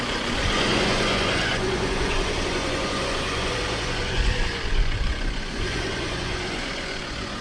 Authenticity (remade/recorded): remade